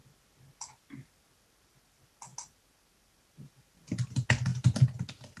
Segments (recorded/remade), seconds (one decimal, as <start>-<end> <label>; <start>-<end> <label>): 0.0-5.4 recorded